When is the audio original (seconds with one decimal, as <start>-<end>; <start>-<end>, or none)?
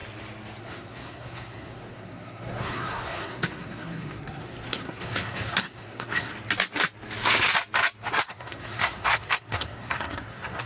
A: 0.0-0.6; 6.3-8.1